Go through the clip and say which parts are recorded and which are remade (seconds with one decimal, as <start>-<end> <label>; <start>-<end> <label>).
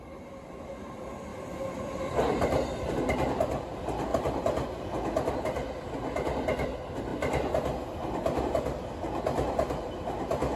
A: 0.0-10.6 recorded